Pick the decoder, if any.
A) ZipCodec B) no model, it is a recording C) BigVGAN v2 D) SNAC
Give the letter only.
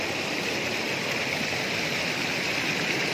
B